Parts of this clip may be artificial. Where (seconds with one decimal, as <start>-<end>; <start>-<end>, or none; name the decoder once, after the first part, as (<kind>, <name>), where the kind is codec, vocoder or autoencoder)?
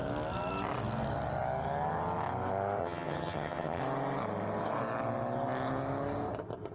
2.8-3.8 (vocoder, HiFi-GAN)